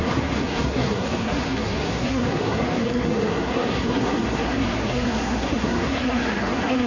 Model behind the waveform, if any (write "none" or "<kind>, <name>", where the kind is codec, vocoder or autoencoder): codec, SNAC